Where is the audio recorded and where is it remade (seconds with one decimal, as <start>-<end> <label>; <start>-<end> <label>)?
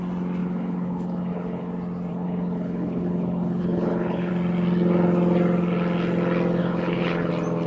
0.0-0.4 recorded; 0.4-1.7 remade; 1.7-2.1 recorded; 2.1-4.3 remade; 4.3-6.6 recorded; 6.6-7.3 remade; 7.3-7.7 recorded